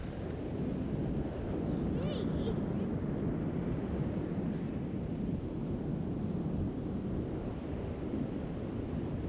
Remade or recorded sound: recorded